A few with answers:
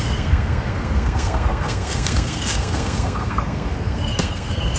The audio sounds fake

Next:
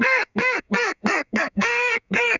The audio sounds fake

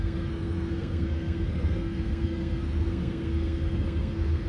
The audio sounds fake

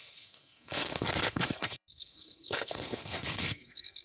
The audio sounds fake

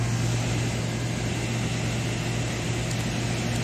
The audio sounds real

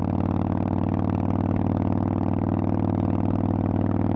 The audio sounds real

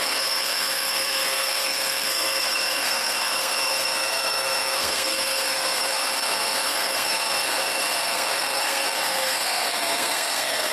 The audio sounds fake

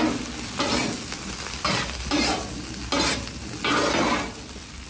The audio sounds real